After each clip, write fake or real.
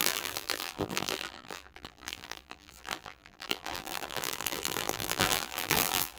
fake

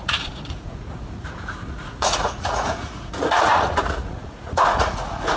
fake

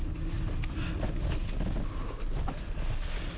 real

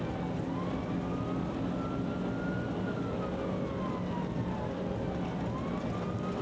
real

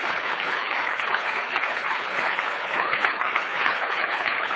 fake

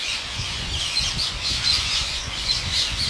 fake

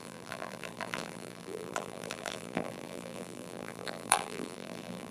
fake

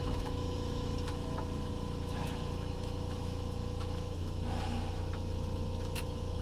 fake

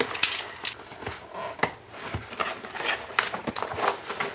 real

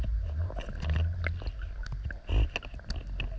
real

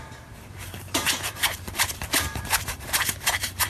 fake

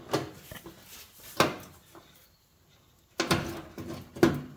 real